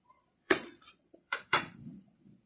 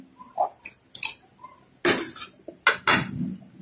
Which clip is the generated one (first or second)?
first